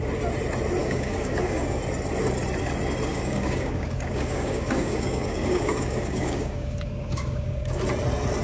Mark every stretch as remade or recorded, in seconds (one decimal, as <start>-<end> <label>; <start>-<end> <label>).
0.0-0.8 recorded; 0.8-1.8 remade; 1.8-3.1 recorded; 3.1-7.8 remade; 7.8-8.4 recorded

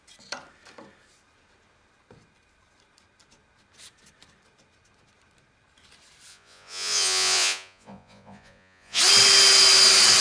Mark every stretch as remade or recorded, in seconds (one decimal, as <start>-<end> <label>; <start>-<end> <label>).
0.0-6.3 recorded; 6.3-9.0 remade; 9.0-10.2 recorded